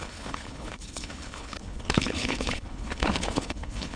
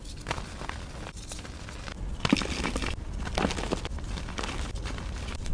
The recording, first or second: second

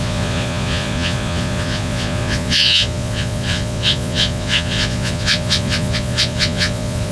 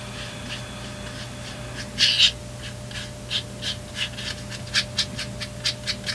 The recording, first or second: second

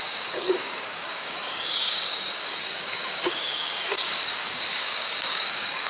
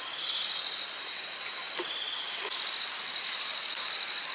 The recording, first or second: second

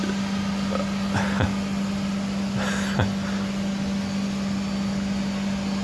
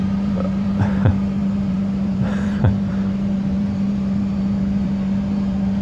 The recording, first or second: first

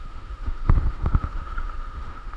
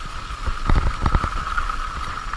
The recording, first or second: second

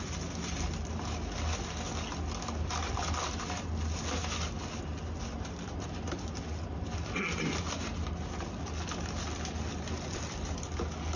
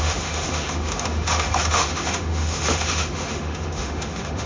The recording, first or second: first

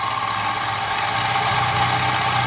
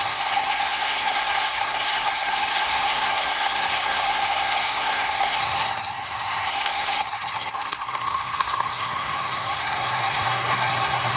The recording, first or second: first